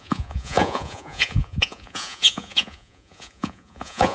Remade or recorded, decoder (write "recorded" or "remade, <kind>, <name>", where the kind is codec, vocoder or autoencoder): remade, vocoder, Vocos